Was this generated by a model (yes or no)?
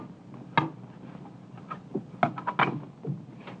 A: no